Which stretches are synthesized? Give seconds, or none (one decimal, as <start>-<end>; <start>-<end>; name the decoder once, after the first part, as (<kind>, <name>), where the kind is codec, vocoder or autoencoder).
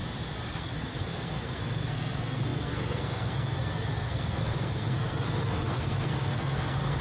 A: 0.5-7.0 (codec, SNAC)